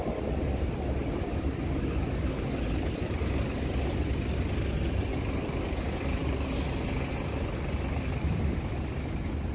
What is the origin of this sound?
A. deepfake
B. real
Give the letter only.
B